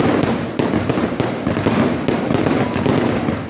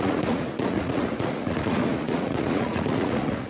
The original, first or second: first